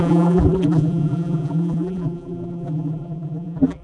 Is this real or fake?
fake